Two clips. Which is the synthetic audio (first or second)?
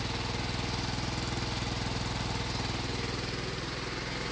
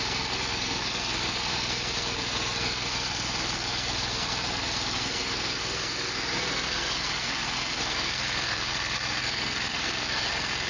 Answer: second